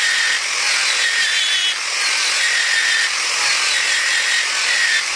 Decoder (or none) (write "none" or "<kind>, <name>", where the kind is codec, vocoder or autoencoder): none